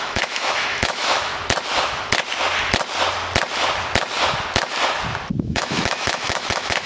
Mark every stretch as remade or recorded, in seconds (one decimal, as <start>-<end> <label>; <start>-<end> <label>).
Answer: 0.0-1.3 remade; 1.3-5.4 recorded; 5.4-6.9 remade